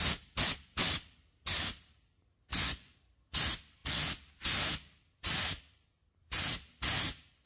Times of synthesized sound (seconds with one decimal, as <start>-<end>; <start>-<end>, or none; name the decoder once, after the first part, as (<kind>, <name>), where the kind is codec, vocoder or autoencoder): 2.5-3.0 (vocoder, Vocos)